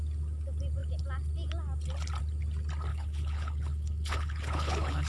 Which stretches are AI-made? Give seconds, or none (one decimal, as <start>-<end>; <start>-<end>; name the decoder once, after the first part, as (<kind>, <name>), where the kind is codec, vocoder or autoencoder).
2.9-5.1 (codec, HILCodec)